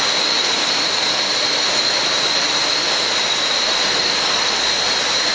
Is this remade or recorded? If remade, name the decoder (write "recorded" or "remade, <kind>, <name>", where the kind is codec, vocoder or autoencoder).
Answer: recorded